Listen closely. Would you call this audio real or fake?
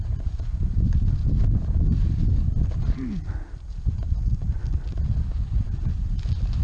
real